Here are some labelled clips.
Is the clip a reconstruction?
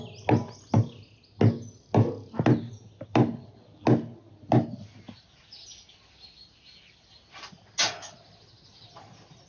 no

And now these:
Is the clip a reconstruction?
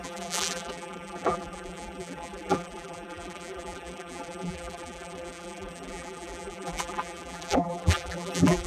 yes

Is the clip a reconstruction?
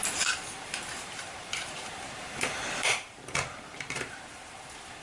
yes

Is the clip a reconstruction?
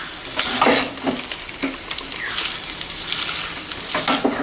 no